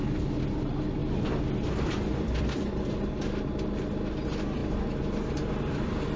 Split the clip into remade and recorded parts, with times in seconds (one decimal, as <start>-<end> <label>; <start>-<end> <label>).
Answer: 0.0-1.0 recorded; 1.0-3.1 remade; 3.1-4.6 recorded; 4.6-6.2 remade